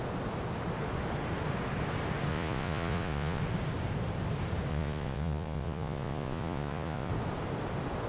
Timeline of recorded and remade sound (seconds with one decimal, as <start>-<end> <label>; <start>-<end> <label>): 0.0-2.3 recorded; 2.3-3.4 remade; 3.4-4.7 recorded; 4.7-7.1 remade; 7.1-8.1 recorded

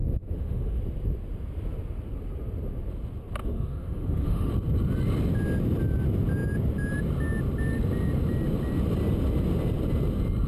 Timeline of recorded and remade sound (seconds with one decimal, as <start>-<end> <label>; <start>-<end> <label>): 0.0-0.8 remade; 0.8-3.4 recorded; 3.4-4.5 remade; 4.5-10.5 recorded

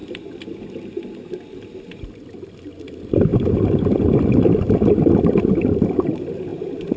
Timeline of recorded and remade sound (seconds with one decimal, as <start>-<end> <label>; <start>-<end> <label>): 0.0-7.0 recorded

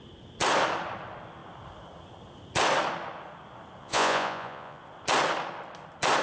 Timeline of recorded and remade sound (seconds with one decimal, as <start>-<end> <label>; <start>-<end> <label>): 0.0-3.8 recorded; 3.8-4.8 remade; 4.8-6.2 recorded